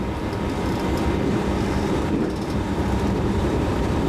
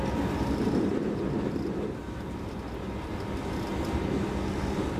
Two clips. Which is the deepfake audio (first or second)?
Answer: first